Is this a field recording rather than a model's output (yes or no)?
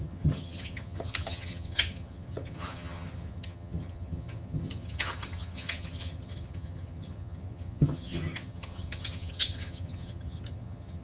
no